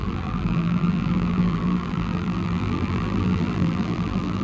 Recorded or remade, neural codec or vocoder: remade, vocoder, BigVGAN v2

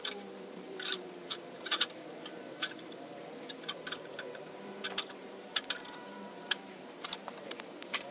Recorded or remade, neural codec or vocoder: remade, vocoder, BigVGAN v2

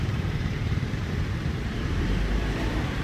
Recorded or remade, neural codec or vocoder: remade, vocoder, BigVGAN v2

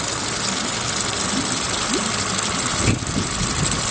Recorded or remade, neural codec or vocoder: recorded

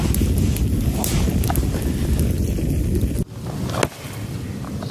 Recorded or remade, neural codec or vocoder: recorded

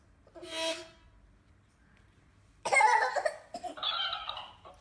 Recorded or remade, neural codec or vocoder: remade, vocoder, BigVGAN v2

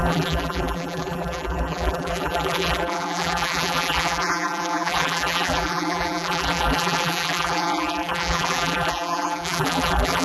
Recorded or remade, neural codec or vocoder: remade, vocoder, BigVGAN v2